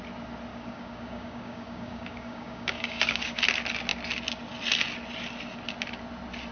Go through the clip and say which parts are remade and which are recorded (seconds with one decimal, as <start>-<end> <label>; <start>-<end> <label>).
0.0-0.5 recorded; 0.5-3.4 remade; 3.4-6.5 recorded